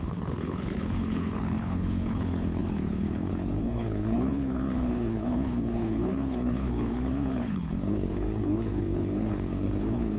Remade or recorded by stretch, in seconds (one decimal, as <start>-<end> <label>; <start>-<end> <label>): 0.0-10.2 remade